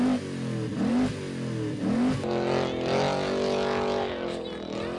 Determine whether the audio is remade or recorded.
recorded